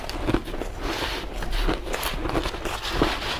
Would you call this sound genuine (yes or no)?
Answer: yes